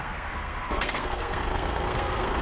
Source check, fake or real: fake